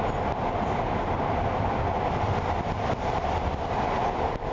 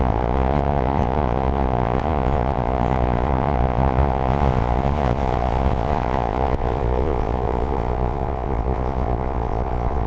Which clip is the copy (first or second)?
second